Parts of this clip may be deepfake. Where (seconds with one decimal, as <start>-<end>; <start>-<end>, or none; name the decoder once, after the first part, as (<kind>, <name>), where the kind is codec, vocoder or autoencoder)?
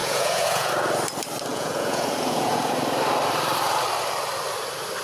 0.0-0.7 (vocoder, Vocos); 1.5-2.7